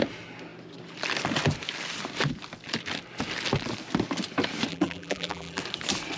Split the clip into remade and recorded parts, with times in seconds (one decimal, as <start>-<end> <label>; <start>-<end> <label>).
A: 0.0-4.7 recorded; 4.7-5.6 remade; 5.6-6.2 recorded